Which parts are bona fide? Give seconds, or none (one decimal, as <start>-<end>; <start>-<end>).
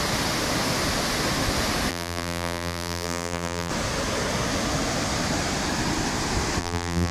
0.0-1.9; 3.7-6.6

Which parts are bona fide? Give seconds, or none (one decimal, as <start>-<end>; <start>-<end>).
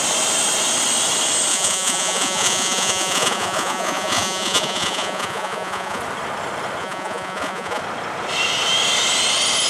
0.0-1.5; 6.0-6.8; 7.8-9.7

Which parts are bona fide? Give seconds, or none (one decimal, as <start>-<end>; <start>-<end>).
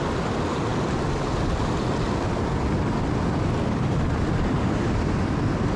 0.0-5.8